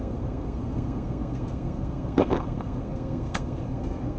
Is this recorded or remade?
remade